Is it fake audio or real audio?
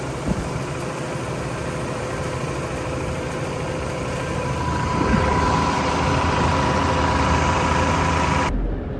fake